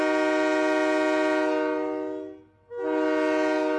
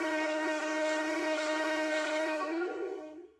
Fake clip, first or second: second